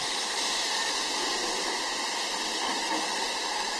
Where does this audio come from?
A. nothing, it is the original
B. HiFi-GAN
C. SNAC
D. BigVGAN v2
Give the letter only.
A